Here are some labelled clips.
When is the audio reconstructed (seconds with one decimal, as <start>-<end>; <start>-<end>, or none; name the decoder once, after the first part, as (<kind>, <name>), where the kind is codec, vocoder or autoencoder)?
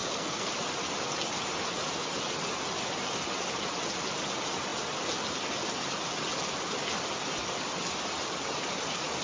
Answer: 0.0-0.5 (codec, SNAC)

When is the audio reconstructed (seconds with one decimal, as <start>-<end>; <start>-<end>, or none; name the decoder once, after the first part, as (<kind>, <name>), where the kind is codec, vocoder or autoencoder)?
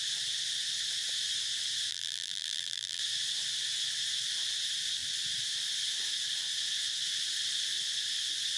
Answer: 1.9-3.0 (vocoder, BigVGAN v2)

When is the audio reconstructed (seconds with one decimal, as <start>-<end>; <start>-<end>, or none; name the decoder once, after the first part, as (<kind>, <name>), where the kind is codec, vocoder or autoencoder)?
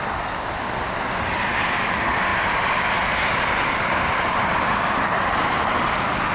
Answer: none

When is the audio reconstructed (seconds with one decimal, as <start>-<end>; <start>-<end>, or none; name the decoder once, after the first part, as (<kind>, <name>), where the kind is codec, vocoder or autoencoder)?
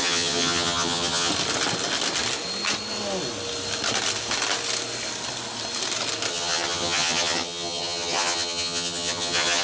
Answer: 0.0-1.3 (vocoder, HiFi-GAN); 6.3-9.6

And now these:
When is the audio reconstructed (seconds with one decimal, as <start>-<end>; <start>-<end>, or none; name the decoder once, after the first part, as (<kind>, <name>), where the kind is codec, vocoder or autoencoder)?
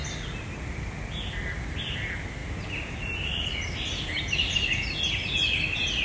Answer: none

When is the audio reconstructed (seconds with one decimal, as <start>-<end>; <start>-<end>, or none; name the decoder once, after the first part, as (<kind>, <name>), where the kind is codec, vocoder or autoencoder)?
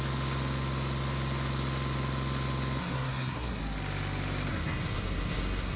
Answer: 2.8-3.6 (codec, SNAC); 4.5-5.8